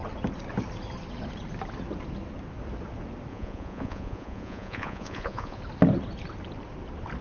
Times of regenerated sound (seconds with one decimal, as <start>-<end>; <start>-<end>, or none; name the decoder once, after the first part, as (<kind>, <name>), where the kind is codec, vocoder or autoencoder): 3.3-5.6 (vocoder, Vocos)